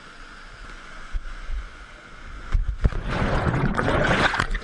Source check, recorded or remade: remade